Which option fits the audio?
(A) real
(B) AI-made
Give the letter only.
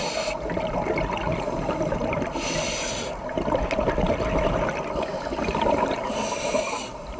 A